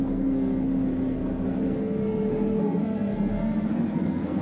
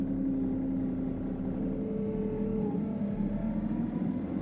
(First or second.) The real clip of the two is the second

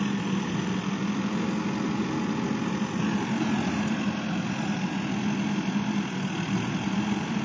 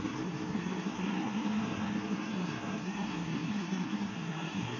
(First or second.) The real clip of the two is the first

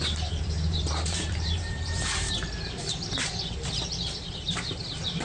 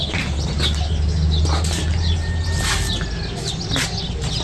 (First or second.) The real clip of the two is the second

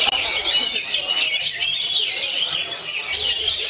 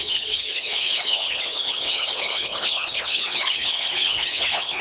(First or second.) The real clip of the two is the first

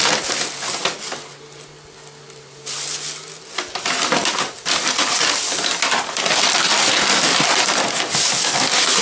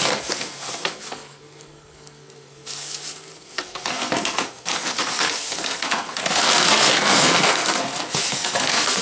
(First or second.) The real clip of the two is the first